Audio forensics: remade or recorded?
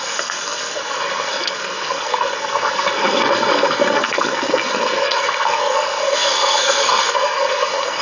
remade